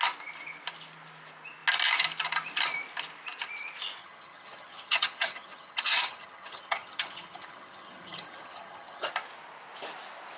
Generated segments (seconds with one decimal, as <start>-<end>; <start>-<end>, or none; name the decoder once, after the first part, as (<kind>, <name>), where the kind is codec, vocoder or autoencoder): 4.0-9.1 (vocoder, HiFi-GAN)